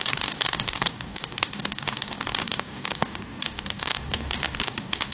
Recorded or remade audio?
remade